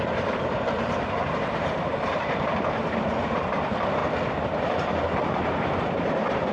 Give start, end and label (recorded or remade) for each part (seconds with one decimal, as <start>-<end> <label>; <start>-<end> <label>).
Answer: 0.0-4.0 remade; 4.0-4.6 recorded; 4.6-6.5 remade